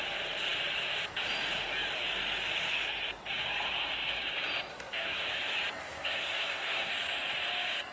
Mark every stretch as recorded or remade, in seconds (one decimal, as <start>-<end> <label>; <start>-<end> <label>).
0.0-4.7 recorded; 4.7-5.2 remade; 5.2-5.8 recorded; 5.8-6.9 remade; 6.9-7.9 recorded